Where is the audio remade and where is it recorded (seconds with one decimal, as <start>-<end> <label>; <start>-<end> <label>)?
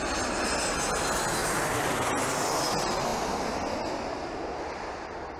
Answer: 0.0-1.4 recorded; 1.4-2.5 remade; 2.5-5.4 recorded